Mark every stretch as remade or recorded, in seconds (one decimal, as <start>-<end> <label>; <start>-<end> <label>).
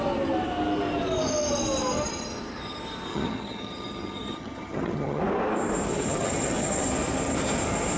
0.0-3.1 recorded; 3.1-5.2 remade; 5.2-5.9 recorded; 5.9-6.9 remade; 6.9-8.0 recorded